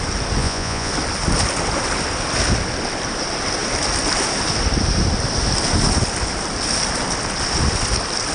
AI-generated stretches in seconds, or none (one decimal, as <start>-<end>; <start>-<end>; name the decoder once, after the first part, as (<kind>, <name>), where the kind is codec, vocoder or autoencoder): 0.4-0.9 (vocoder, Vocos)